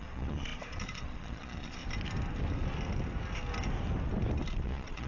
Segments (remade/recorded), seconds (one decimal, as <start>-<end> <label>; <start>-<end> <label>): 0.0-1.8 remade; 1.8-4.6 recorded; 4.6-5.1 remade

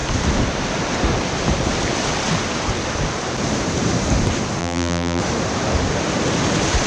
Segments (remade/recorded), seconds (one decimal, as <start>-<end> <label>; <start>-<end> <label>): 0.0-4.6 recorded; 4.6-5.2 remade; 5.2-6.9 recorded

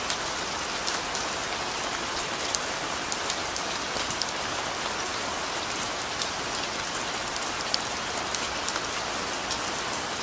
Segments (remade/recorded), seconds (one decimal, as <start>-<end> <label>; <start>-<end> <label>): 0.0-10.2 recorded

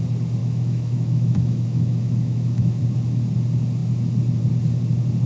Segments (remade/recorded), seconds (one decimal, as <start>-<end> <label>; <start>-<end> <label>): 0.0-0.4 recorded; 0.4-2.8 remade; 2.8-5.3 recorded

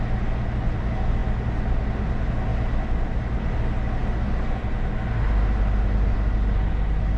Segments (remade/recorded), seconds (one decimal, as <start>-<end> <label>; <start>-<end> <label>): 0.0-2.5 recorded; 2.5-3.6 remade; 3.6-7.2 recorded

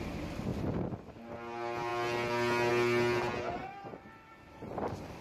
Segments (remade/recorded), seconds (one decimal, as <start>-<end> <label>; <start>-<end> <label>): 0.0-5.2 recorded